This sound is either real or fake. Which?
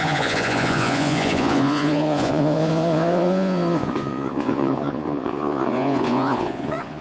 fake